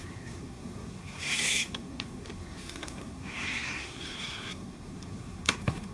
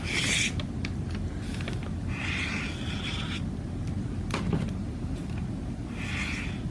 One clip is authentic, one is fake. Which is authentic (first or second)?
second